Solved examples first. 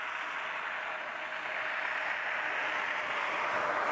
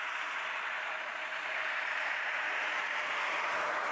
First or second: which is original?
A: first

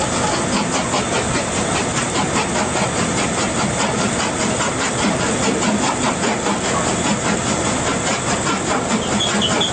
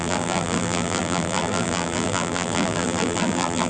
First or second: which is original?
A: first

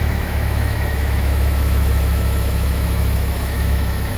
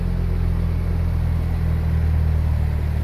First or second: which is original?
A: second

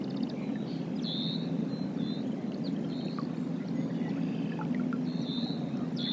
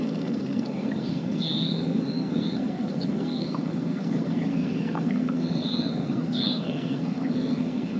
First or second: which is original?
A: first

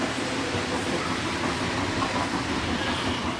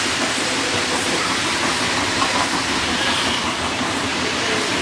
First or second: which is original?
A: first